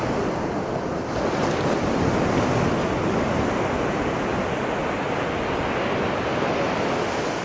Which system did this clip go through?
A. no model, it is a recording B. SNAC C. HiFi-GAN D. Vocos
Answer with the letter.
A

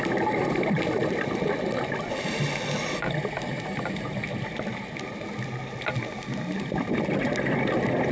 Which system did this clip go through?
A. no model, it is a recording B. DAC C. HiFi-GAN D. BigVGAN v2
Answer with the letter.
A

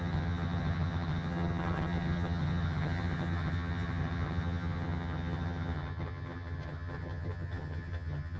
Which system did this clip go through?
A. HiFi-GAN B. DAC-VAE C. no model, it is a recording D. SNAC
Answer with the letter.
A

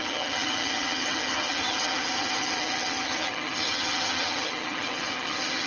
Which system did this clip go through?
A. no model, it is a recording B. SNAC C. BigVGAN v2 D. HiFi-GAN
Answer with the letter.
D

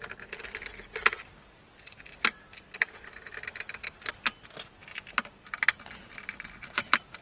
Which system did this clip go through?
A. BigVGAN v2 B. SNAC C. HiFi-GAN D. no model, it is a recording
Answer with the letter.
D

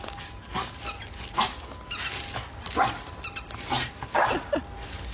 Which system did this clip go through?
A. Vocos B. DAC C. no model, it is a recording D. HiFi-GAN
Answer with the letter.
C